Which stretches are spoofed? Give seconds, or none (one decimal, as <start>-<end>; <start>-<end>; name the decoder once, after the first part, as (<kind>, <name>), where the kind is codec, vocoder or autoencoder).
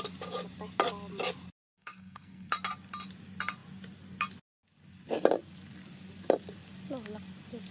1.6-2.5 (codec, SNAC)